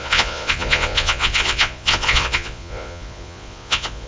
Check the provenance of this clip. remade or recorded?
remade